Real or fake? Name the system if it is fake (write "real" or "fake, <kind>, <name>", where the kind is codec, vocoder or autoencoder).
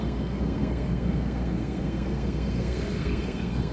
fake, codec, SNAC